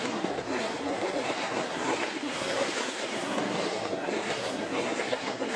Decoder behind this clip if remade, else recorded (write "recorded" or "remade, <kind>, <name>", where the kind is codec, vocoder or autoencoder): remade, codec, SNAC